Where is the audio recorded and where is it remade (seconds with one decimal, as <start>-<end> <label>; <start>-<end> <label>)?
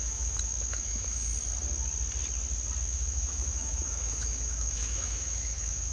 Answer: 0.0-1.3 remade; 1.3-2.8 recorded; 2.8-5.9 remade